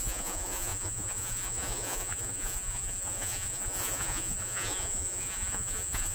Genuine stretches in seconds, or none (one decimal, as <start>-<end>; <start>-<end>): none